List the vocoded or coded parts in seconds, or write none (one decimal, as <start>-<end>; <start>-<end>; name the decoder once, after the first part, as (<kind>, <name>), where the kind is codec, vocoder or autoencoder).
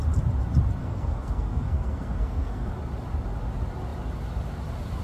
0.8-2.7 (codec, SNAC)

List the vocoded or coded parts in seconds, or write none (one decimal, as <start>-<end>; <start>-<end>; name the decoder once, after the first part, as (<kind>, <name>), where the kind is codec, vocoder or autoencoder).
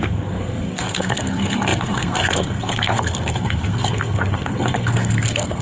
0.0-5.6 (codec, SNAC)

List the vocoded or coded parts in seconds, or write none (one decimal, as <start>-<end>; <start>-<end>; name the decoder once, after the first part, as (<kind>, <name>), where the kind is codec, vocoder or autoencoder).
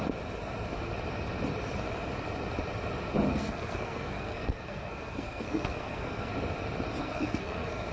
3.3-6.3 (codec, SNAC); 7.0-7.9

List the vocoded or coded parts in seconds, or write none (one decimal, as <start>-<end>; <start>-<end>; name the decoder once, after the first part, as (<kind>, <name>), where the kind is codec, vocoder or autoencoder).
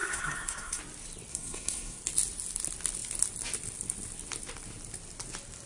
0.0-0.8 (codec, SNAC); 1.3-2.0